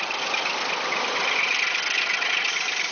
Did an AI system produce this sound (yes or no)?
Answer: no